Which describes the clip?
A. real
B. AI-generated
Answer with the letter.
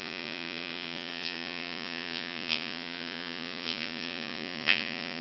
B